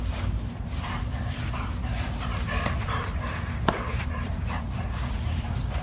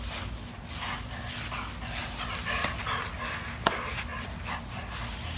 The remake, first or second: first